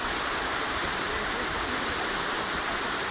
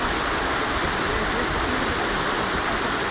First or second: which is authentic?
second